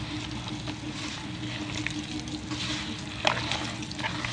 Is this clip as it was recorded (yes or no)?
yes